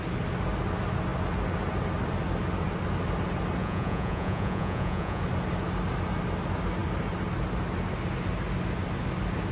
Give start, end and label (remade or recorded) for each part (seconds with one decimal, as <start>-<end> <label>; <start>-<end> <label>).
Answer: 0.0-3.6 recorded; 3.6-5.2 remade; 5.2-9.5 recorded